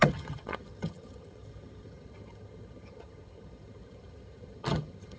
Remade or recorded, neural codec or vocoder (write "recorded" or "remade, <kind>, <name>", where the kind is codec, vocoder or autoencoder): remade, vocoder, HiFi-GAN